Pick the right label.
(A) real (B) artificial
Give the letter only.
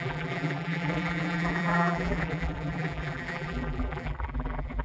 B